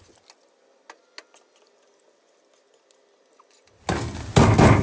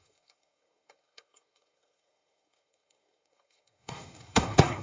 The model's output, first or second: second